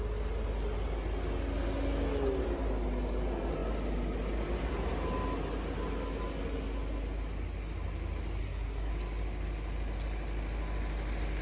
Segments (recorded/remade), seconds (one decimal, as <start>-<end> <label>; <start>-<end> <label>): 0.0-8.4 recorded; 8.4-8.9 remade; 8.9-11.4 recorded